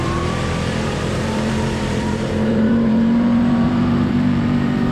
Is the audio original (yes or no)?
no